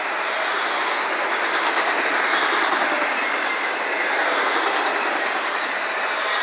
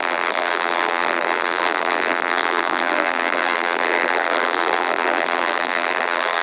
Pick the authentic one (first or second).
first